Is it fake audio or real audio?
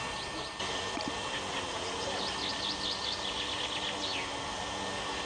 real